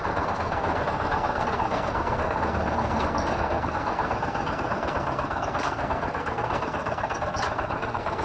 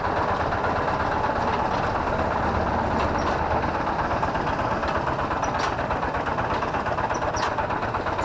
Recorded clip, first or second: second